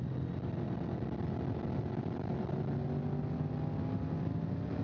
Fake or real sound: real